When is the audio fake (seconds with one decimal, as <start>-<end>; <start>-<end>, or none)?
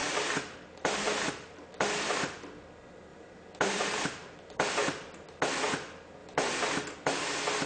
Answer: 3.1-4.7; 6.2-6.7